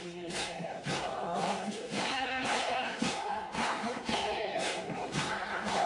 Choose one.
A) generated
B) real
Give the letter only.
A